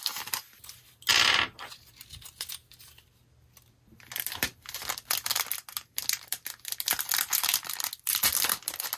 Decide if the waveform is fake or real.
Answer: real